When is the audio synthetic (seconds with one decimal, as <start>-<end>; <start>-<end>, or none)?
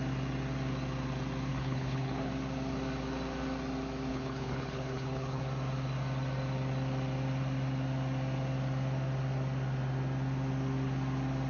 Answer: 1.5-2.3; 4.1-5.4